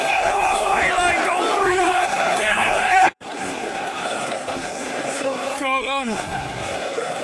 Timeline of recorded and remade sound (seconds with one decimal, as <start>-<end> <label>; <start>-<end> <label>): 0.0-0.8 remade; 0.8-1.6 recorded; 1.6-7.2 remade